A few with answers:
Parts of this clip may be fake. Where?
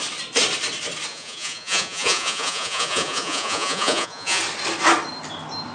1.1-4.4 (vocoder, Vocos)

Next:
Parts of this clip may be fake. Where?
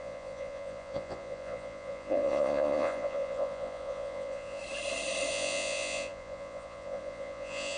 0.0-4.6 (vocoder, Vocos); 5.3-7.8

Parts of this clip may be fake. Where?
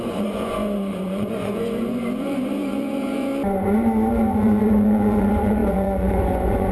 0.0-3.3 (vocoder, Vocos); 4.1-6.7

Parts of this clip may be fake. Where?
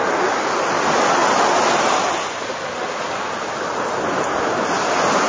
none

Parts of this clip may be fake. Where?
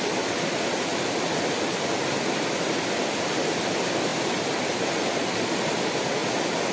none